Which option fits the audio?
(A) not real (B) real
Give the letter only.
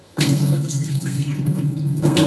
A